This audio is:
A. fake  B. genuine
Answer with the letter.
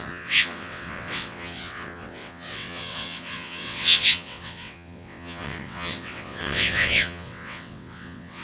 A